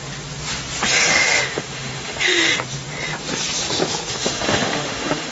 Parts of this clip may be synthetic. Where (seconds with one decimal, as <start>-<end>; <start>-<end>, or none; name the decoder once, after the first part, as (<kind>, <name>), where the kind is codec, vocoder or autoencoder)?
1.1-2.5 (autoencoder, DAC-VAE); 4.1-5.3